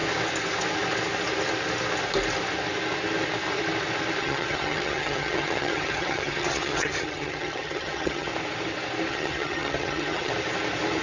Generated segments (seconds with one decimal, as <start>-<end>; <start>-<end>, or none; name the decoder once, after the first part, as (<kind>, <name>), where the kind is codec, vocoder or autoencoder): 4.2-8.3 (vocoder, HiFi-GAN); 9.1-10.3